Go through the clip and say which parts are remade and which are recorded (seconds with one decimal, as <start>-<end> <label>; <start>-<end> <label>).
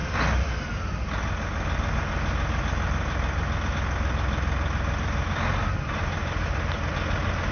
0.0-6.2 recorded; 6.2-6.9 remade; 6.9-7.5 recorded